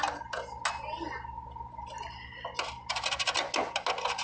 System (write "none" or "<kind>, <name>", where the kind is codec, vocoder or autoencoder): none